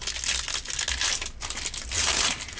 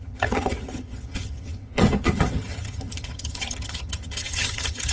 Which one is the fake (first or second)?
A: second